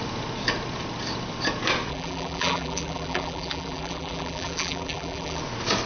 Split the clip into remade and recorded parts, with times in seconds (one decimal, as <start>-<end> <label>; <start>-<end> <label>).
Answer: 0.0-1.9 recorded; 1.9-5.4 remade; 5.4-5.9 recorded